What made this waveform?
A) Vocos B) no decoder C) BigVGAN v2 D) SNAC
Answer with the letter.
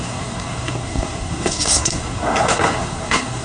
D